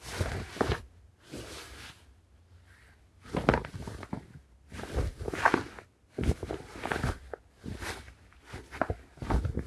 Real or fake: real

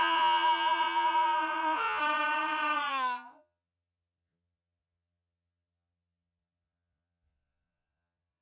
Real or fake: fake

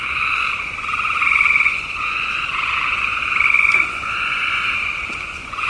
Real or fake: fake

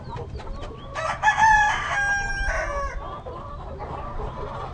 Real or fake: real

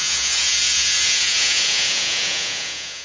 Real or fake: fake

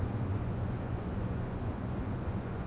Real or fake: fake